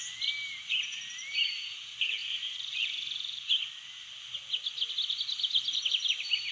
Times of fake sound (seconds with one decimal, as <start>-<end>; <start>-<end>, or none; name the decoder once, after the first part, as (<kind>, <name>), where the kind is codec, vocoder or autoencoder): 2.2-3.6 (vocoder, BigVGAN v2)